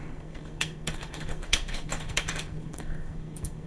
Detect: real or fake fake